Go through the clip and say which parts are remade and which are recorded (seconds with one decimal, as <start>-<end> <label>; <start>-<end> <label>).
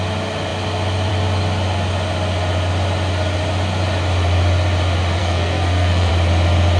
0.0-5.2 recorded; 5.2-6.1 remade; 6.1-6.8 recorded